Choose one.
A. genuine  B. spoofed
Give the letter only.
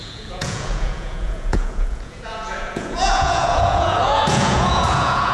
B